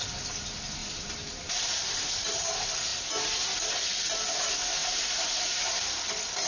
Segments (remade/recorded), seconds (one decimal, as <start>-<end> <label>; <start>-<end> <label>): 0.0-0.8 recorded; 0.8-2.5 remade; 2.5-4.8 recorded; 4.8-6.1 remade; 6.1-6.5 recorded